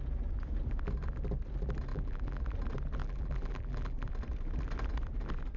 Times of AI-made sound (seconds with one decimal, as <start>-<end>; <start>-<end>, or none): 1.9-2.4; 3.0-4.1